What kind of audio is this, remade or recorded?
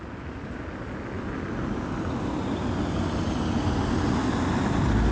recorded